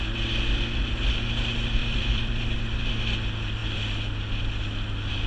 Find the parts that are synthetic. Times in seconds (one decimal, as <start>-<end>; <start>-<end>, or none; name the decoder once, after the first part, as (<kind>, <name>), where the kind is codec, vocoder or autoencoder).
1.8-2.9 (vocoder, BigVGAN v2)